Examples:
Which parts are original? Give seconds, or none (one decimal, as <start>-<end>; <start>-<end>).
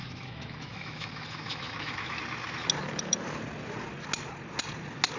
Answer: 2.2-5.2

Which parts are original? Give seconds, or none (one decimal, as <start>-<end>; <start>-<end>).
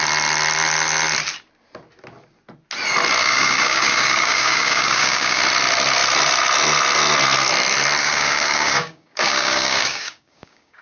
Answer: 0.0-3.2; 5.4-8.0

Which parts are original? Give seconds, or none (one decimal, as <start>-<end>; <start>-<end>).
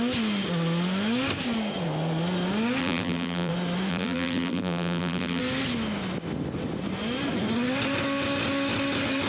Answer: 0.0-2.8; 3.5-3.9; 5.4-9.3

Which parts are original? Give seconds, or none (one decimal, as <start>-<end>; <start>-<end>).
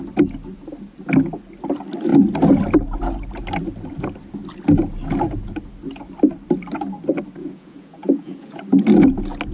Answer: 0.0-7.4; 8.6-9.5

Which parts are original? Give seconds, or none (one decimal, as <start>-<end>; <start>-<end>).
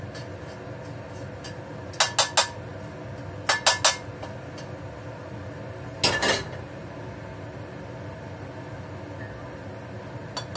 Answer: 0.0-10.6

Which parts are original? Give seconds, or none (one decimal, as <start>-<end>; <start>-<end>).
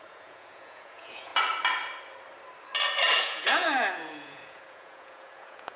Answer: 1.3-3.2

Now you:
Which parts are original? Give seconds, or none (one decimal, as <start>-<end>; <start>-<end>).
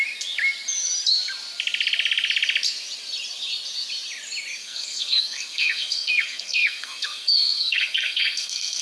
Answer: 0.0-4.6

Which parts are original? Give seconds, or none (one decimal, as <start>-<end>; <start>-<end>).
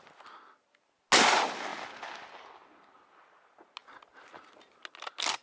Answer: 0.0-1.7; 2.5-5.4